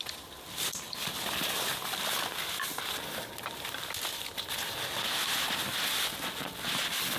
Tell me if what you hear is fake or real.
real